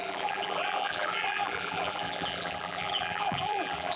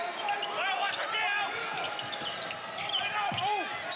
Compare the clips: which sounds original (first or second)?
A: second